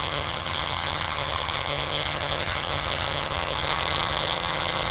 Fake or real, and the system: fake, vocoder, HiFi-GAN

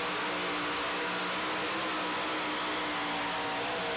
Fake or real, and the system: real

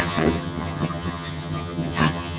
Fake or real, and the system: fake, vocoder, HiFi-GAN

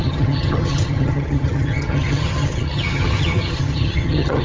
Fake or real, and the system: fake, vocoder, HiFi-GAN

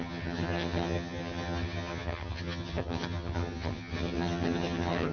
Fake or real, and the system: fake, vocoder, HiFi-GAN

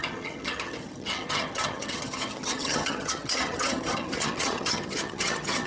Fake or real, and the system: fake, vocoder, HiFi-GAN